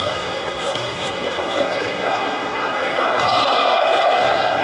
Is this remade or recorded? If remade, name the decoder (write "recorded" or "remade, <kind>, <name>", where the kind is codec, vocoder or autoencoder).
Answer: remade, codec, SNAC